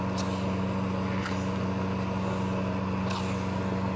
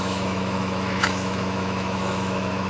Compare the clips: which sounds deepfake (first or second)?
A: second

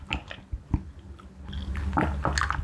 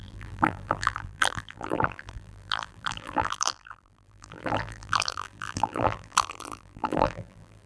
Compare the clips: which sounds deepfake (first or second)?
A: second